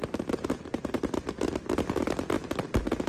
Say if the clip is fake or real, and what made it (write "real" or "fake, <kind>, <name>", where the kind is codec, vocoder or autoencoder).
real